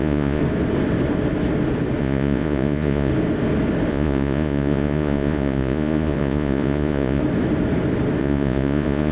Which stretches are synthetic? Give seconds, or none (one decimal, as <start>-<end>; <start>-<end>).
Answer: 0.0-0.4; 2.0-3.1; 3.9-7.2; 8.2-9.1